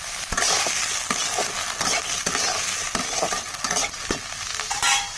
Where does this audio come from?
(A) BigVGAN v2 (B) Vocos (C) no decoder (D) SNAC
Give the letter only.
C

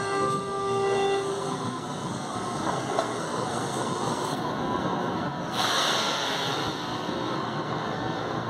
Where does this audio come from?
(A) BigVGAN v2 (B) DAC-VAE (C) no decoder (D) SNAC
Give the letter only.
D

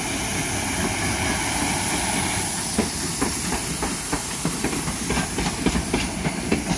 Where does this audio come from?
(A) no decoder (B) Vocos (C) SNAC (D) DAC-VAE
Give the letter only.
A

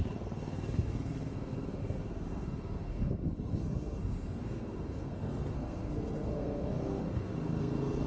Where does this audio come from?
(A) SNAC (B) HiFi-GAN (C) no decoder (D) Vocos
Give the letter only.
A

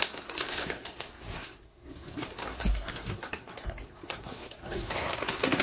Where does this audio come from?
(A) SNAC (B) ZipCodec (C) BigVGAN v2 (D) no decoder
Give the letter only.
A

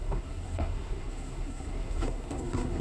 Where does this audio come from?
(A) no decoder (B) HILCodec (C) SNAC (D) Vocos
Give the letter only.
C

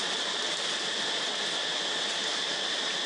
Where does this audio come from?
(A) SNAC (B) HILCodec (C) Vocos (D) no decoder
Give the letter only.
D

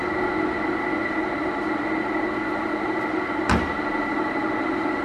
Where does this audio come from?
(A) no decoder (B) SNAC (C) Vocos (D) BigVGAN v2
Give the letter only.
A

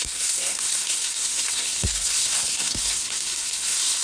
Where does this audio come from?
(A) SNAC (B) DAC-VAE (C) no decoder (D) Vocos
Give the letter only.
A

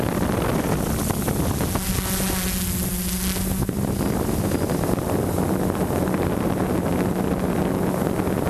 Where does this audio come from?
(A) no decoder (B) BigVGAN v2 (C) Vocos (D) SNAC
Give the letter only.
A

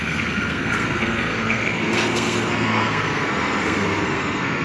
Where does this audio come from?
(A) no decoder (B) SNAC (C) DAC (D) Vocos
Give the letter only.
B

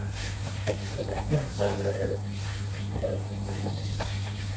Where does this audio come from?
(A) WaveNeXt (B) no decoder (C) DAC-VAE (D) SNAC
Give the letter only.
D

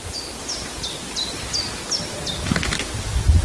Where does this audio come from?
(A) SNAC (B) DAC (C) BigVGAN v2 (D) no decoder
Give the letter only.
D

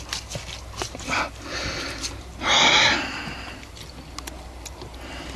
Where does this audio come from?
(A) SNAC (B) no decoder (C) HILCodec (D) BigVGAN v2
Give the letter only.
B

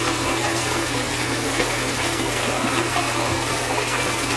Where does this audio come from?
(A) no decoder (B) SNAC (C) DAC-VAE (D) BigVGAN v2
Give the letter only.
B